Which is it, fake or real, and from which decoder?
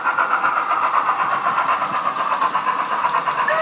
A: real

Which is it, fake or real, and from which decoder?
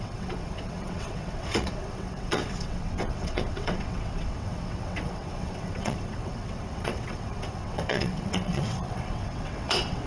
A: fake, vocoder, WaveNeXt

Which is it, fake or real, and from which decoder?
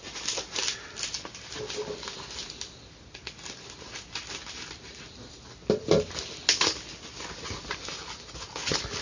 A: real